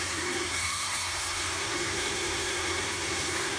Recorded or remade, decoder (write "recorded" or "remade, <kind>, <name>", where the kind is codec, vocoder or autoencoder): remade, codec, SNAC